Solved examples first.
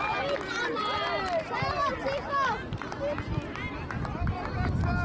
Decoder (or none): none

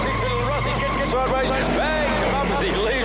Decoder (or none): none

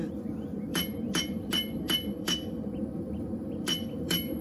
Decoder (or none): vocoder, BigVGAN v2